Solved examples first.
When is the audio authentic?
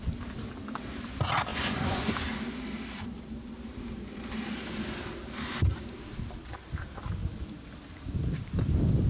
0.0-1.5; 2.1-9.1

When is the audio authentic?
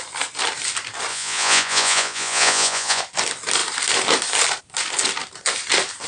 0.0-1.1; 3.0-6.1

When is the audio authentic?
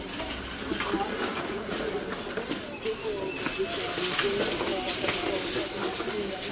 0.0-1.3; 1.9-6.5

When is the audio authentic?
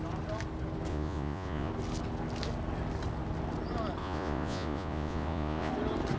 0.0-0.9; 1.7-4.0; 5.7-6.2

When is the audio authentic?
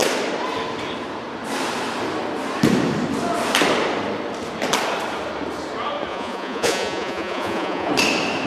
0.0-6.1; 7.9-8.5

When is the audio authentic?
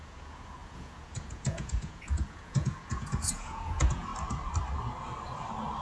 4.1-5.8